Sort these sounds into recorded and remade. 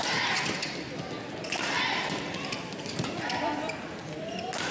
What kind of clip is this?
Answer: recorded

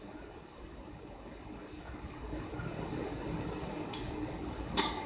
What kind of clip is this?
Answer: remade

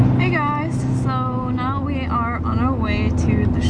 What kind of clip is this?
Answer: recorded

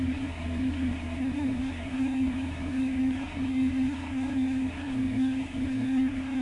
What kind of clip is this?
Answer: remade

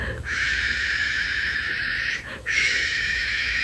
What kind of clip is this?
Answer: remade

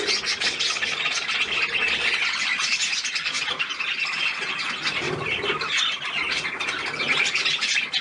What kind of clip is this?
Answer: recorded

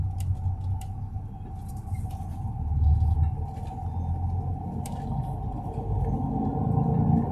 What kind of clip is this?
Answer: recorded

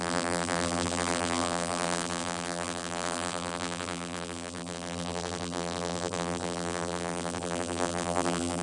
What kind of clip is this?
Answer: remade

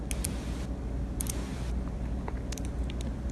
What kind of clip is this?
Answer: recorded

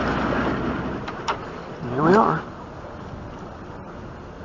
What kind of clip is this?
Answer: recorded